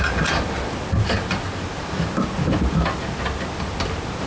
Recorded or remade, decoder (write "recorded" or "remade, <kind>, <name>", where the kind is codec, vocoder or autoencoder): recorded